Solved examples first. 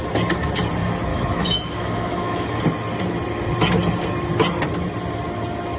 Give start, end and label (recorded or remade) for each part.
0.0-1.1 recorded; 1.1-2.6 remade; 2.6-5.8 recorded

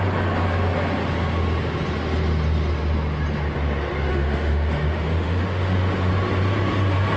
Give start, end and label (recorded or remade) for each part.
0.0-4.1 recorded; 4.1-6.1 remade; 6.1-7.2 recorded

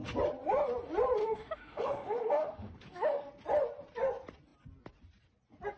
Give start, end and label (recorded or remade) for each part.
0.0-1.2 recorded; 1.2-3.3 remade; 3.3-5.8 recorded